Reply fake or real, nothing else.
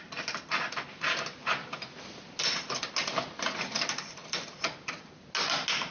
real